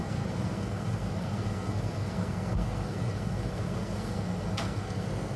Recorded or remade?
remade